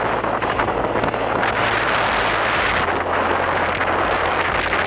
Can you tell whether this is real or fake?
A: real